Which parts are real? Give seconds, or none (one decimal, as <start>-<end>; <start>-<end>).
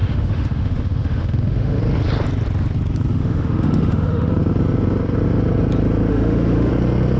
1.8-3.1; 4.3-6.1; 6.7-7.2